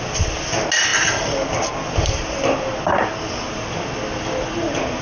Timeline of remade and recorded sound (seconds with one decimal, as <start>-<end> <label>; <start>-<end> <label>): 0.0-5.0 recorded